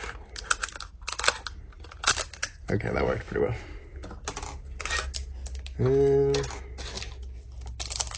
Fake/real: real